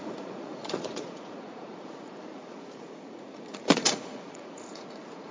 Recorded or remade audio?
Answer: remade